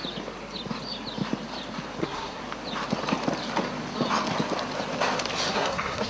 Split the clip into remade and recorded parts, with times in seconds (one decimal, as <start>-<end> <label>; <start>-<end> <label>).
0.0-2.0 recorded; 2.0-2.4 remade; 2.4-5.5 recorded; 5.5-6.1 remade